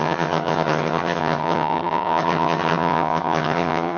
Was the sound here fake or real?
fake